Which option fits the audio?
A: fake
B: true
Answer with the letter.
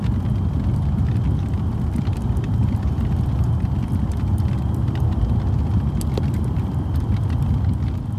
B